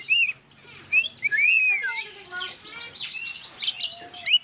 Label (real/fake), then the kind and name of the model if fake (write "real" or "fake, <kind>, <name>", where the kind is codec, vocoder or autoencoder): real